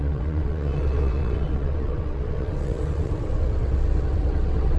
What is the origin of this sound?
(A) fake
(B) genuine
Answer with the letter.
A